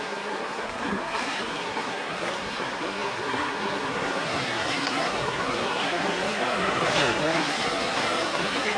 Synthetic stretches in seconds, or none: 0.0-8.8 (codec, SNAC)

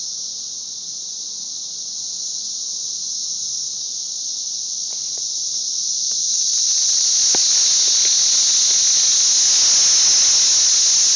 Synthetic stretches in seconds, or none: 4.0-4.6 (vocoder, Vocos)

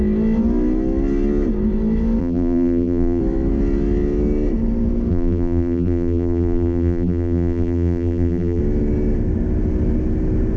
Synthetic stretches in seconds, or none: 2.2-3.2 (vocoder, BigVGAN v2); 5.1-8.6

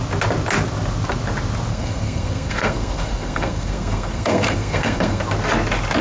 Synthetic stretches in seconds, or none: 1.7-5.2 (codec, SNAC)

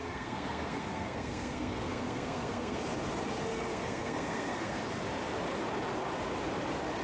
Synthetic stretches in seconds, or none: 0.0-2.8 (codec, SNAC); 3.7-4.8

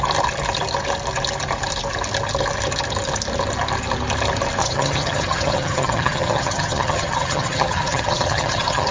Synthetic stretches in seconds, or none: 4.6-8.9 (vocoder, HiFi-GAN)